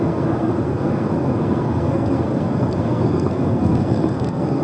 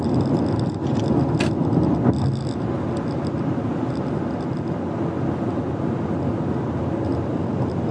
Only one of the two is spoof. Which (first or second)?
first